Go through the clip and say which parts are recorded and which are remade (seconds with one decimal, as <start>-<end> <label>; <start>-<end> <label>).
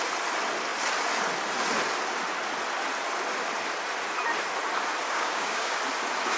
0.0-5.1 recorded; 5.1-5.8 remade; 5.8-6.4 recorded